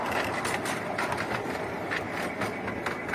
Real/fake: real